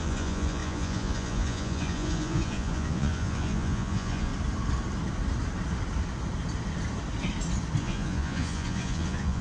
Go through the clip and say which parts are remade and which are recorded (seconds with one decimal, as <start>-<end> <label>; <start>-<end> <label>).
0.0-4.3 remade; 4.3-7.8 recorded; 7.8-9.4 remade